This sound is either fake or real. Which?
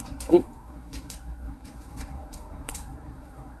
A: fake